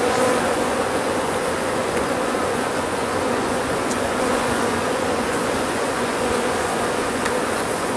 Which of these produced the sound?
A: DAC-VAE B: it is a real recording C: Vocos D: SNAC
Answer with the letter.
C